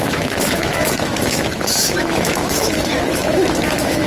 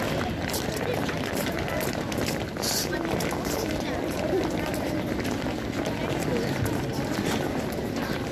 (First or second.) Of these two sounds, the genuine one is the second